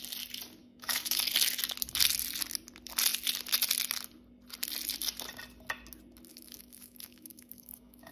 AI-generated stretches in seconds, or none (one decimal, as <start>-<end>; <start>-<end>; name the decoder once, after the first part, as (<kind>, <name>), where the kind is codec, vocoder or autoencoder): 0.6-1.2 (autoencoder, DAC-VAE); 6.3-8.1